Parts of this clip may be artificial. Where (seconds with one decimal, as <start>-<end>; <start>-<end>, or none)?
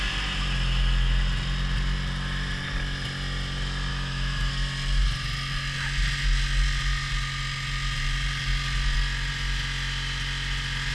3.9-4.5